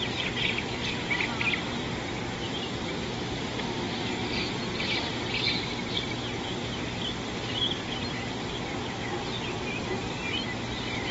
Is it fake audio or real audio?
real